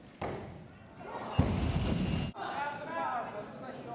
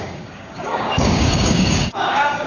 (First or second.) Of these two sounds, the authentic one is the first